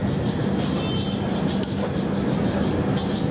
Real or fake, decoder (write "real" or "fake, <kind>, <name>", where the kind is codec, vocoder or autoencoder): real